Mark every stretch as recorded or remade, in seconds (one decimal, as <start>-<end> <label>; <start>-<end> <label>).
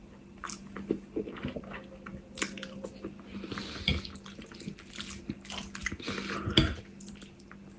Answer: 0.0-7.8 recorded